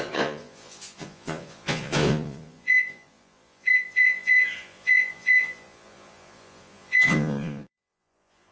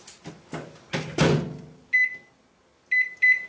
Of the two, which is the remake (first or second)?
first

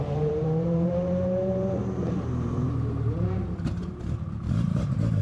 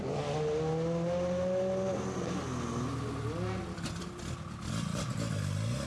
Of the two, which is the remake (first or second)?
first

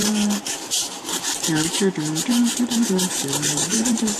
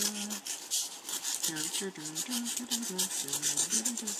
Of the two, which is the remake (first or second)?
first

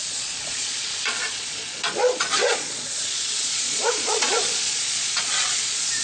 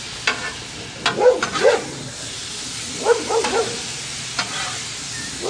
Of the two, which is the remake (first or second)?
first